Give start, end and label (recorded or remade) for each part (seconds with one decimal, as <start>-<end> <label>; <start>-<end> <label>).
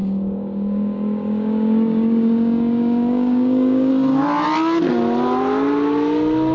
0.0-3.9 remade; 3.9-6.5 recorded